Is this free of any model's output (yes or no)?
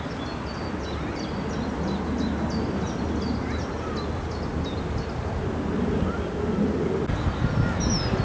yes